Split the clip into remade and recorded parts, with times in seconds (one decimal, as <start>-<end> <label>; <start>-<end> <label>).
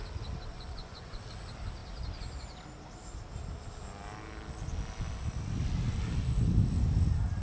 0.0-0.5 recorded; 0.5-1.2 remade; 1.2-7.4 recorded